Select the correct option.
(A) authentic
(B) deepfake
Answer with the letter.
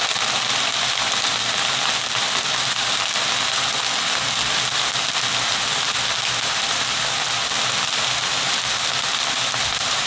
A